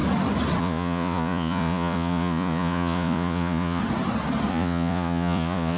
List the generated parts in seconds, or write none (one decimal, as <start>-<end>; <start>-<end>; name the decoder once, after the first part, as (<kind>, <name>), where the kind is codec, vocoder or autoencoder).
0.6-3.8 (vocoder, Vocos); 4.5-5.8